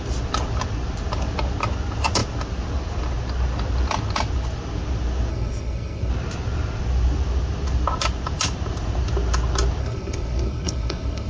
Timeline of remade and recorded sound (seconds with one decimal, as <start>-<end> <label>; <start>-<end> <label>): 0.0-5.3 recorded; 5.3-6.1 remade; 6.1-9.8 recorded; 9.8-11.3 remade